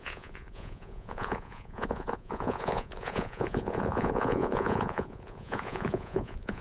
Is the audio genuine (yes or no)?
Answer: no